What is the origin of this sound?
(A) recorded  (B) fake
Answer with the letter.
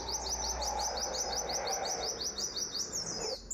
A